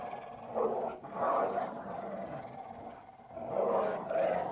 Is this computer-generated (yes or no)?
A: no